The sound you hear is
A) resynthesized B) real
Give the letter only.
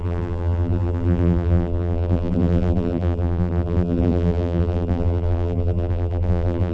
A